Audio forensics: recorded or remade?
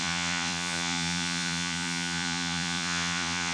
remade